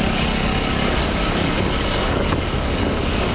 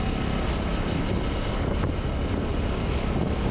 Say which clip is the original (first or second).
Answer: second